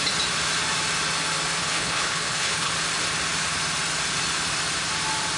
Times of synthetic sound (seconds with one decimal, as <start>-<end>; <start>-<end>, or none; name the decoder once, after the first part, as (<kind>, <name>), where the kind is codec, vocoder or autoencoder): 1.6-2.7 (codec, HILCodec)